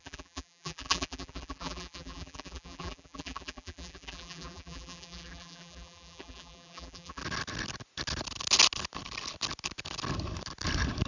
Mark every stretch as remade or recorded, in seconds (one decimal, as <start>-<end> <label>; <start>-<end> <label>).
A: 0.0-7.2 remade; 7.2-11.1 recorded